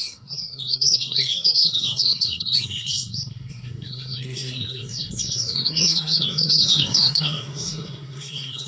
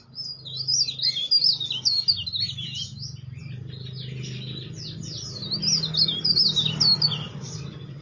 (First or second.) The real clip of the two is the second